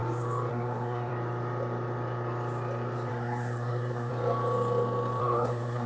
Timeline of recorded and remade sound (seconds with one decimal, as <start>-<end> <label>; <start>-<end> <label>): 0.0-0.5 recorded; 0.5-1.1 remade; 1.1-3.1 recorded; 3.1-4.1 remade; 4.1-5.2 recorded; 5.2-5.9 remade